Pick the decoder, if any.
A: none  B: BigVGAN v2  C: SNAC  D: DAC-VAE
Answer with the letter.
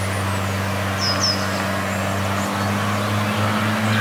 A